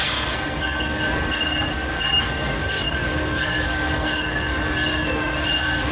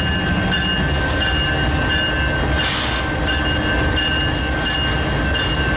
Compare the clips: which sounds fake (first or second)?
first